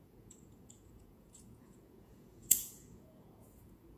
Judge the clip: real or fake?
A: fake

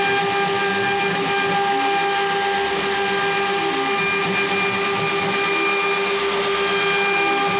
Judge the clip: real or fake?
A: real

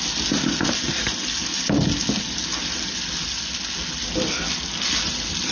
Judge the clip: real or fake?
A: real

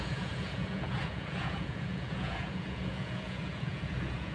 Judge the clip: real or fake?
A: fake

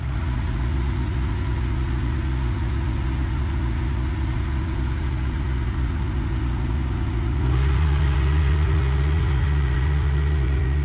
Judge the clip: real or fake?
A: fake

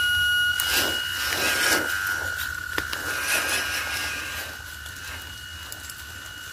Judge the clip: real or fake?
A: real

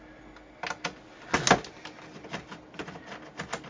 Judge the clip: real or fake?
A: real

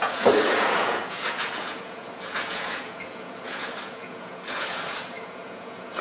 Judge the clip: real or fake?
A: fake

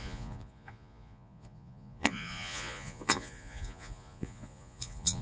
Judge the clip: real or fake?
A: fake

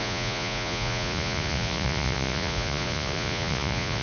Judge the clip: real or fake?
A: fake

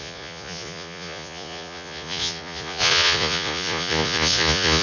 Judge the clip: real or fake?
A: fake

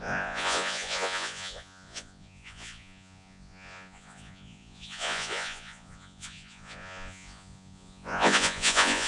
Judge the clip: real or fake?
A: fake